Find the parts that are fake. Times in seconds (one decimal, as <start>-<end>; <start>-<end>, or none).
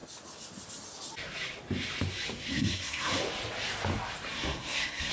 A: 2.5-3.2; 4.3-5.1